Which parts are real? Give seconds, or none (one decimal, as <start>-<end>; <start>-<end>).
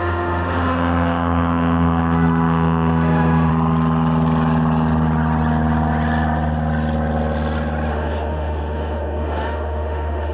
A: 3.5-7.9